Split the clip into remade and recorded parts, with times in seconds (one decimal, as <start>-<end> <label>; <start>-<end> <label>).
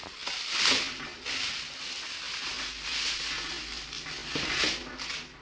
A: 0.0-5.4 recorded